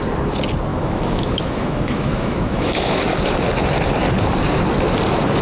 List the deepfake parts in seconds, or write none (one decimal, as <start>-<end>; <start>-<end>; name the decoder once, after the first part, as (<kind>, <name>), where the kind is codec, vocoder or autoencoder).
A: 0.7-3.0 (autoencoder, DAC-VAE)